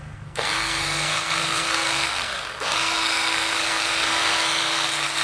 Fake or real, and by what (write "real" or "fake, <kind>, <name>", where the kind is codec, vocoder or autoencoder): fake, codec, SNAC